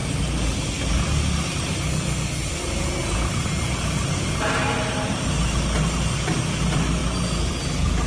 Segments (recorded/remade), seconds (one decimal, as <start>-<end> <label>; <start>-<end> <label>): 0.0-4.0 recorded; 4.0-4.6 remade; 4.6-8.1 recorded